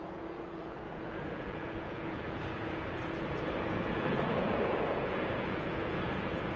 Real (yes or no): no